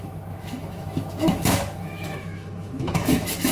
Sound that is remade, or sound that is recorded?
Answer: remade